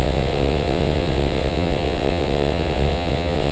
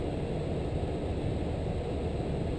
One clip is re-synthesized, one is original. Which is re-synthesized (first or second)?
first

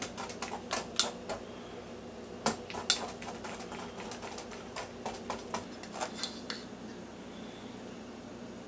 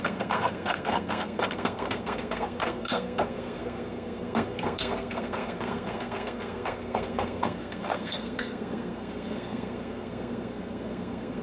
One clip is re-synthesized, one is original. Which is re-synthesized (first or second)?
second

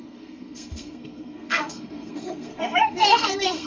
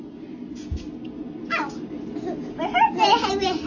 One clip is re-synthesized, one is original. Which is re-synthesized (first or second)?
first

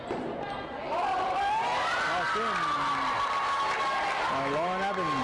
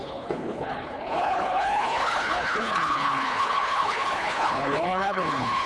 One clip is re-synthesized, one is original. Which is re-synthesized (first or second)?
second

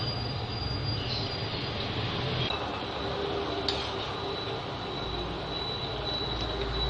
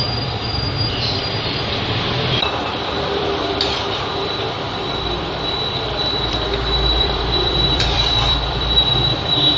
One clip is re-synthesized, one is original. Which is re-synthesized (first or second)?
second